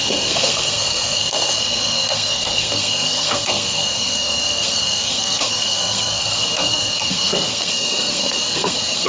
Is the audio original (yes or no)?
no